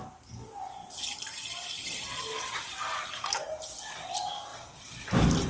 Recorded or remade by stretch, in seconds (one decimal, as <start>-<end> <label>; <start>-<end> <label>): 0.0-4.5 recorded; 4.5-5.5 remade